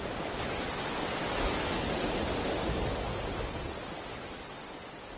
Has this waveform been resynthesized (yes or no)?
no